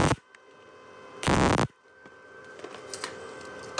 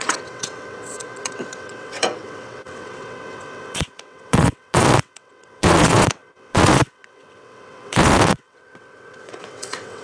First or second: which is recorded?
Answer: first